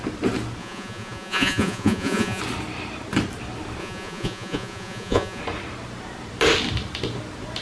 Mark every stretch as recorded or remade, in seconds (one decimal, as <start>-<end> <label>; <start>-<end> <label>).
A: 0.0-0.6 recorded; 0.6-2.4 remade; 2.4-3.8 recorded; 3.8-5.4 remade; 5.4-7.6 recorded